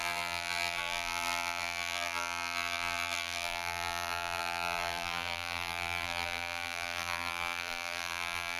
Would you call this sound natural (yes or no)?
no